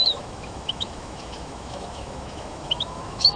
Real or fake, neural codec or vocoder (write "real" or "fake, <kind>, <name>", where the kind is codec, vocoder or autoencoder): fake, autoencoder, DAC-VAE